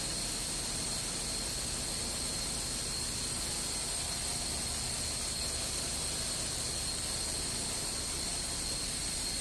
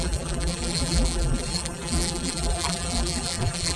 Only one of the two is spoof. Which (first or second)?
second